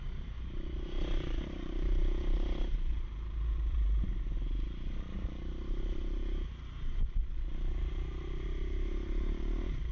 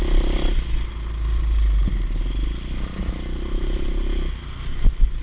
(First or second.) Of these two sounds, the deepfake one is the first